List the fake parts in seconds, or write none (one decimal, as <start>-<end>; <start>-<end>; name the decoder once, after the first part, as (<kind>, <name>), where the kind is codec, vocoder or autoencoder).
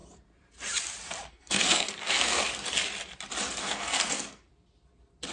1.3-2.4 (codec, SNAC); 3.6-4.5